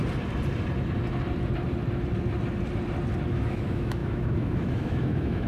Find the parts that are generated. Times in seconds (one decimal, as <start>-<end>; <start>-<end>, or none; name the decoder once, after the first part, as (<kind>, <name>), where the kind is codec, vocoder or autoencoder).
3.3-5.5 (autoencoder, DAC-VAE)